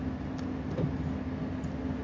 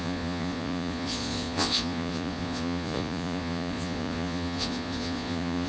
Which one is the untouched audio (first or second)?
first